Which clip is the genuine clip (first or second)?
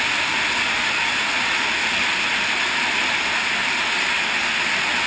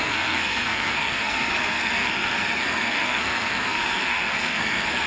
first